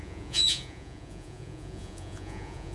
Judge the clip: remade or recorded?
remade